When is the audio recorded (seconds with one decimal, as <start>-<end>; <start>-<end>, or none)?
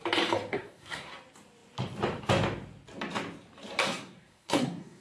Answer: 0.0-0.5; 1.1-3.8